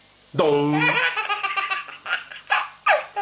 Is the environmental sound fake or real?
real